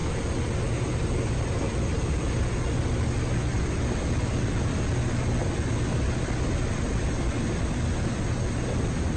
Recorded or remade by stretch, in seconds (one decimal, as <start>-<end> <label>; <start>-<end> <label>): 0.0-9.2 recorded